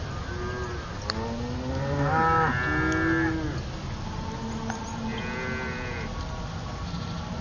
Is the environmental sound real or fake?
real